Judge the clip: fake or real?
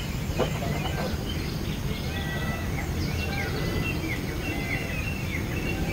real